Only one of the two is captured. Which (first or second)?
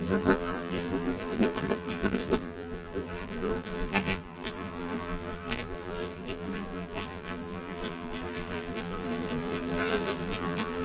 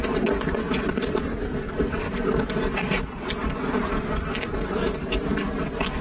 second